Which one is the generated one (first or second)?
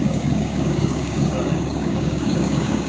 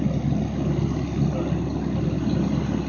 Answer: first